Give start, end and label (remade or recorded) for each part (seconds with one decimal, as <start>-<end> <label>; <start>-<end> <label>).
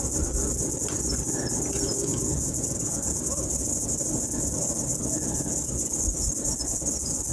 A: 0.0-2.1 recorded; 2.1-3.2 remade; 3.2-7.3 recorded